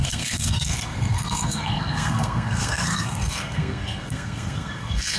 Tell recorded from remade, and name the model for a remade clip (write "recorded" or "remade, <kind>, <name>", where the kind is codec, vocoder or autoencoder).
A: remade, codec, SNAC